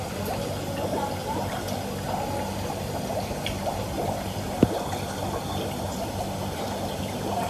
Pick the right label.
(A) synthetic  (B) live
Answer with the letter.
B